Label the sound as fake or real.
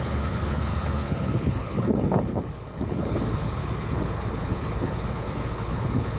fake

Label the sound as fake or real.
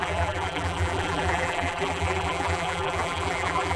fake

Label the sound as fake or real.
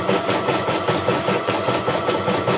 fake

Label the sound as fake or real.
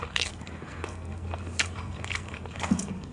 fake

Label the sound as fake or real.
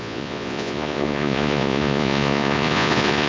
fake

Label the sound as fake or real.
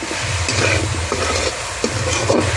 real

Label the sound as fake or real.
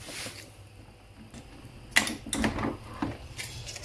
real